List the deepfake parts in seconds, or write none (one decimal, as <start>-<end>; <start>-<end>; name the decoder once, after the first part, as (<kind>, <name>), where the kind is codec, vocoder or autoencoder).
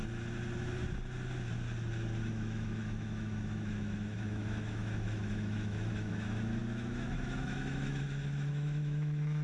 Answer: 2.3-9.4 (autoencoder, DAC-VAE)